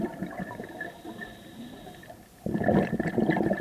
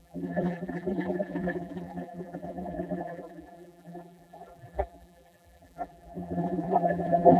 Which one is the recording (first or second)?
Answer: first